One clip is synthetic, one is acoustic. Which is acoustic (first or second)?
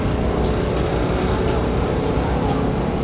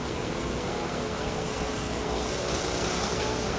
first